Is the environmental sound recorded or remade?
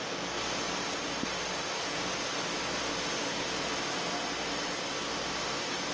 recorded